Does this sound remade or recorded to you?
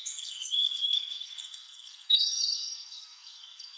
remade